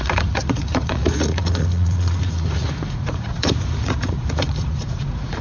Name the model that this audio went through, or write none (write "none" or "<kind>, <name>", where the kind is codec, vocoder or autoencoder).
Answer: vocoder, Vocos